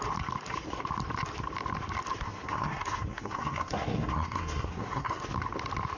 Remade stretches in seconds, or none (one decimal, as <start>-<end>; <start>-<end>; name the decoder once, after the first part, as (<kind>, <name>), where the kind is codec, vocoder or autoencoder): 2.2-5.2 (codec, SNAC)